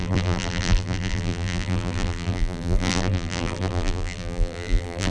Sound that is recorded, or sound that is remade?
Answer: remade